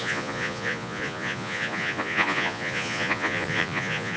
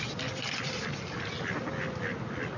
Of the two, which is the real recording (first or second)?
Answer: second